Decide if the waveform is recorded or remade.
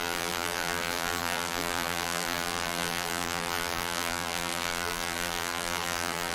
remade